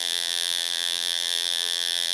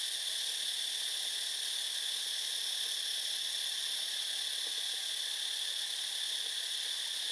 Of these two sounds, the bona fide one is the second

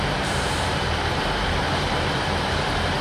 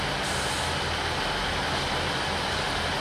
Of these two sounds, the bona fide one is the second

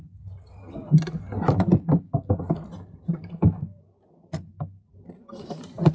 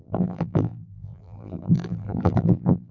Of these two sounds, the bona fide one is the first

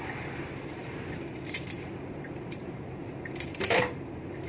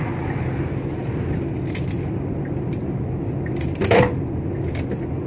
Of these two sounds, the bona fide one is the second